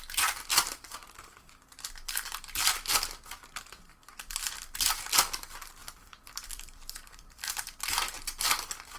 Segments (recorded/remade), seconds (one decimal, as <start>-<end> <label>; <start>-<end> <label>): 0.0-5.8 recorded; 5.8-7.5 remade; 7.5-9.0 recorded